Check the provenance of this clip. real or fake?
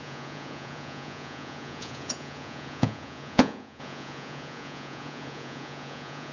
fake